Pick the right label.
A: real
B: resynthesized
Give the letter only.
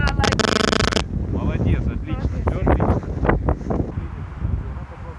A